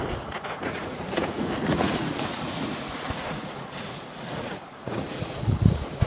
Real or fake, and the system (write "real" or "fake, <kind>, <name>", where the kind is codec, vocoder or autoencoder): fake, vocoder, Vocos